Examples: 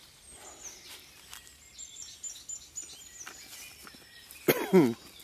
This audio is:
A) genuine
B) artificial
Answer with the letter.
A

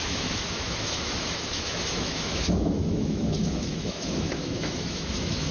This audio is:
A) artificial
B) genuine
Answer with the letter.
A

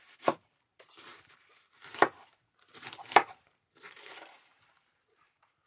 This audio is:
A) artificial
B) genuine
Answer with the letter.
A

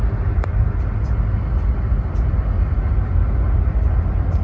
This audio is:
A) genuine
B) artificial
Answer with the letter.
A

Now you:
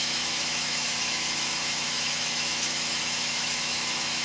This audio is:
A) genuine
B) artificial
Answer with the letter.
B